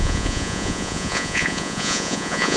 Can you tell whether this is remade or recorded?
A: remade